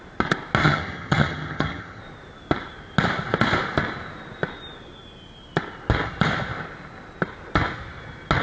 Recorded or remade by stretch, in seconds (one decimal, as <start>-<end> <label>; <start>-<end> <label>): 0.0-0.6 recorded; 0.6-2.0 remade; 2.0-8.4 recorded